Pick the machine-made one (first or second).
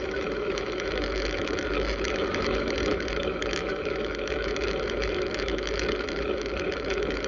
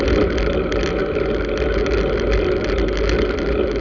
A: first